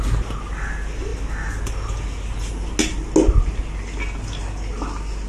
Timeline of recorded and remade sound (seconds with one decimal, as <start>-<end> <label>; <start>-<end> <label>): 0.0-5.3 recorded